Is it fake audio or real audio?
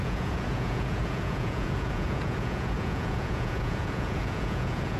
fake